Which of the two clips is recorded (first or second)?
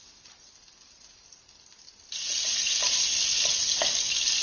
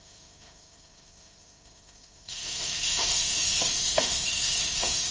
first